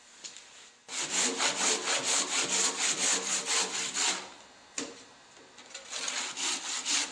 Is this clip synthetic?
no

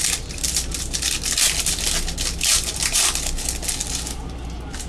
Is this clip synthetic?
no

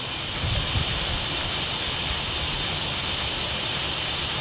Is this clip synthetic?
no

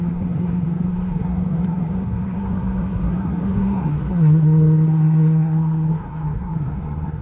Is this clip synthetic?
yes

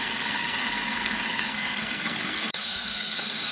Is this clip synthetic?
yes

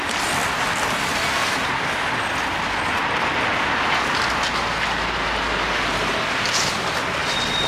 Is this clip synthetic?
no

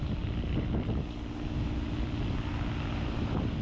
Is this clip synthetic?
no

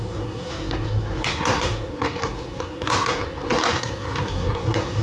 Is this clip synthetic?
yes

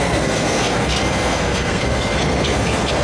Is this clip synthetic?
yes